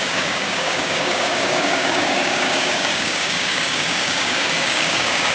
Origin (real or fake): fake